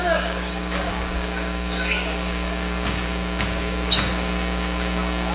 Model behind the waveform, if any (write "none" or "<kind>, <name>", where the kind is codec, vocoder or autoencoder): codec, DAC